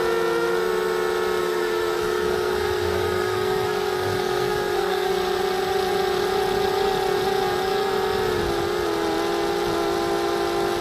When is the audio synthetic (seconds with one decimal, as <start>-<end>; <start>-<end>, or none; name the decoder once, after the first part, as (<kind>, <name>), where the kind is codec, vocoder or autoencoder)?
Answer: 1.4-5.1 (codec, SNAC)